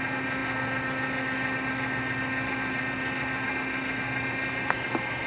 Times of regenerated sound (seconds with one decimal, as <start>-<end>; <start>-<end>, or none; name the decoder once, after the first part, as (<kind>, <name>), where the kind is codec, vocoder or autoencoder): none